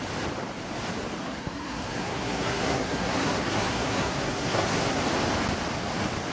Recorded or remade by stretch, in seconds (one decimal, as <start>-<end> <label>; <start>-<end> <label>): 0.0-1.2 recorded; 1.2-5.0 remade; 5.0-6.3 recorded